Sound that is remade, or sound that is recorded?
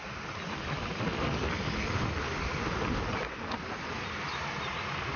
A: recorded